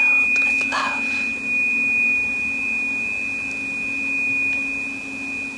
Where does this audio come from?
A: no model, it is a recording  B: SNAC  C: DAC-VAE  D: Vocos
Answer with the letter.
A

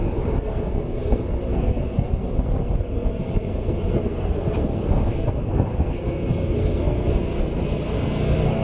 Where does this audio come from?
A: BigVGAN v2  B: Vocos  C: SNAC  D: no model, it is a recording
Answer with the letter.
C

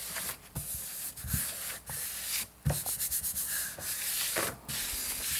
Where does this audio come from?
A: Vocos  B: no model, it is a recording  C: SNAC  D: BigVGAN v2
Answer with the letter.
B